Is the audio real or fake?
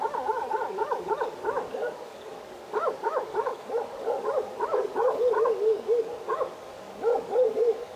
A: fake